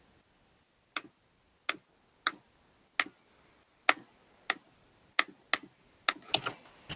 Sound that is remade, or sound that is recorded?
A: recorded